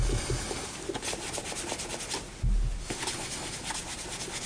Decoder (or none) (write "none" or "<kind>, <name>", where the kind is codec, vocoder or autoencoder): none